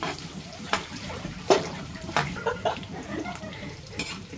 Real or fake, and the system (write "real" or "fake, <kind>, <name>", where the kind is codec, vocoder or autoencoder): fake, vocoder, BigVGAN v2